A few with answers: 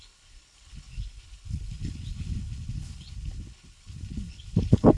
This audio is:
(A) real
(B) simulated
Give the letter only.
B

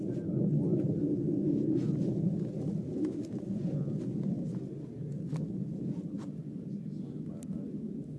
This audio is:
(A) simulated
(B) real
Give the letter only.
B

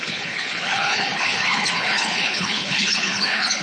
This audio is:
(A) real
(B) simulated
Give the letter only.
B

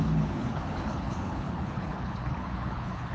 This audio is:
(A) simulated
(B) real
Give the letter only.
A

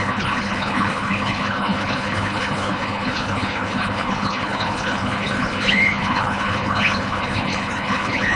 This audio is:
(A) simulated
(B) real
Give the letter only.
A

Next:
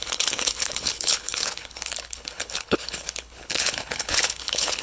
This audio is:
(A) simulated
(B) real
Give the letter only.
A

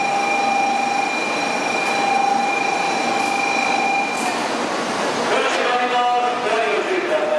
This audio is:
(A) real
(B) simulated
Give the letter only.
A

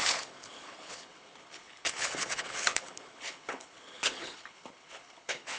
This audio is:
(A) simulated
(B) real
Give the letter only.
A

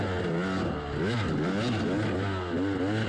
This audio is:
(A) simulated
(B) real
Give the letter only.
B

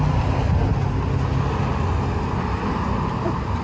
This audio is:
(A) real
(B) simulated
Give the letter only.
A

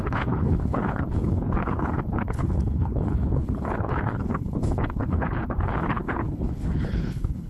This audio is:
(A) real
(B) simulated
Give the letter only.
B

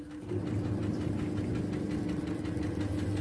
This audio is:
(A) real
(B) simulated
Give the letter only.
A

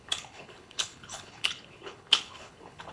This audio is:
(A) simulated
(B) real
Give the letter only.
A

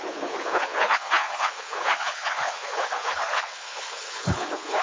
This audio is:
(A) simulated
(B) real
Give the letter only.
A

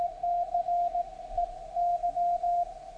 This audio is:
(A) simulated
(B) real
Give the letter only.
B